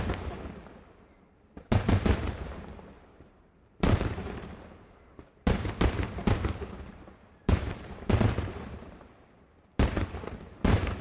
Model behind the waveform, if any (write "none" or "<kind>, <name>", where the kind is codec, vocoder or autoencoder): vocoder, BigVGAN v2